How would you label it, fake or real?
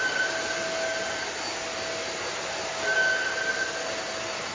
real